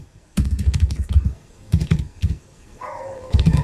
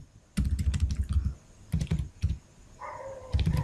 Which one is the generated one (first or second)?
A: first